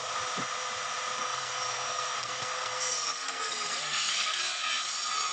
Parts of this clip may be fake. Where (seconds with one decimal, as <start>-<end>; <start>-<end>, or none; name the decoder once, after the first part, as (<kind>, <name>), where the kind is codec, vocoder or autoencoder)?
1.2-4.4 (codec, SNAC)